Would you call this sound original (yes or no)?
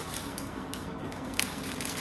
no